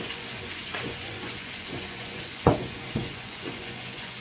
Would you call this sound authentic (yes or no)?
no